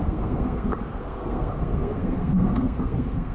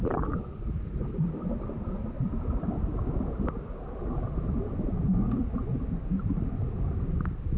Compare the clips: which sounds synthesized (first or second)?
first